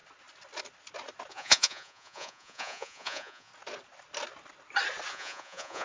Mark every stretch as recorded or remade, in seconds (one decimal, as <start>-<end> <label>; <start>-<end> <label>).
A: 0.0-1.3 recorded; 1.3-3.5 remade; 3.5-5.1 recorded; 5.1-5.8 remade